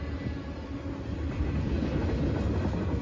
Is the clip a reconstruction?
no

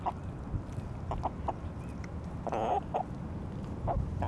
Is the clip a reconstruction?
no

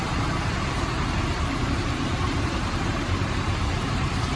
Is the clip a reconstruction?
yes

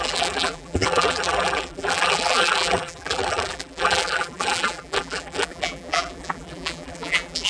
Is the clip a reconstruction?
yes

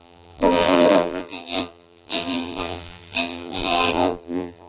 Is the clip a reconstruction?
yes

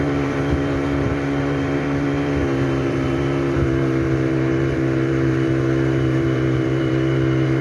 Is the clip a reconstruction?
yes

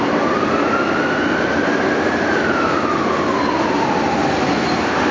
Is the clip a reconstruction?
no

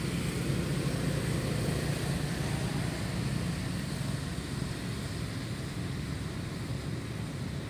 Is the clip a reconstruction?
no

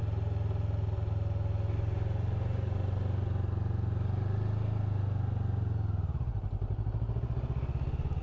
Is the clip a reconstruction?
no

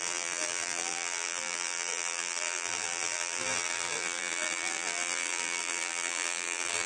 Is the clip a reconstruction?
yes